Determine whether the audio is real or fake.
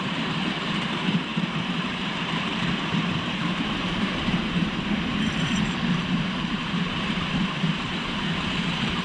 fake